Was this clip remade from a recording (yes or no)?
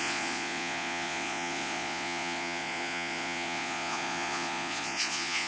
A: yes